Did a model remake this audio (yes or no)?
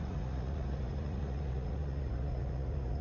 yes